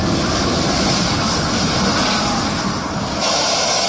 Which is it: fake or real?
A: real